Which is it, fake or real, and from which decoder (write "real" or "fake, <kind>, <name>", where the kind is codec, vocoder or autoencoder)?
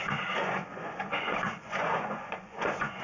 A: fake, vocoder, Vocos